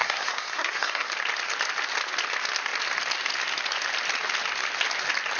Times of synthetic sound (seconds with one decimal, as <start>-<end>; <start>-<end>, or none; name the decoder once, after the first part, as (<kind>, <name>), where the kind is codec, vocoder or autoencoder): 0.0-1.1 (codec, SNAC)